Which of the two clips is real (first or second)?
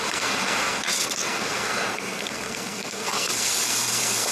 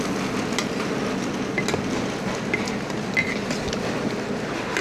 second